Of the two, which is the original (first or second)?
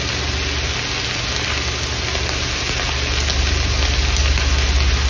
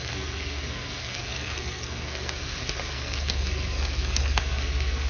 first